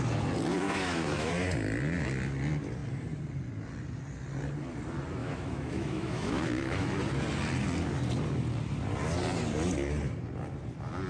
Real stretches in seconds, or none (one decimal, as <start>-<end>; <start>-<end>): 0.0-0.5; 1.3-5.2; 7.0-11.1